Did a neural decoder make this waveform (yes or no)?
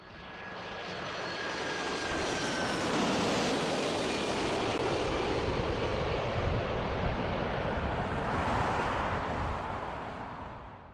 no